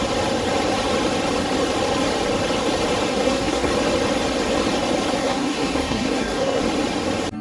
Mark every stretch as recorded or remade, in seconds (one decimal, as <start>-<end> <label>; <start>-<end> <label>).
0.0-3.1 recorded; 3.1-3.7 remade; 3.7-5.2 recorded; 5.2-6.6 remade; 6.6-7.4 recorded